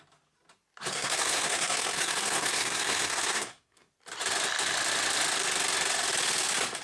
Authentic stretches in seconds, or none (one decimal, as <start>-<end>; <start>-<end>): 0.0-0.9; 3.9-6.8

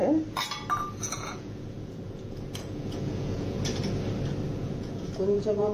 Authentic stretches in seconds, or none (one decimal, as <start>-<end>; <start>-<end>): 0.0-1.0; 3.7-4.5